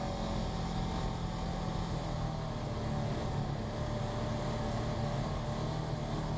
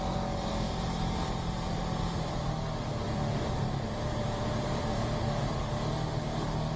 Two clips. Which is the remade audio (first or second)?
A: second